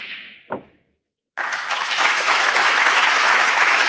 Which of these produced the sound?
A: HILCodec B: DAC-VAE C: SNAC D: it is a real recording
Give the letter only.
B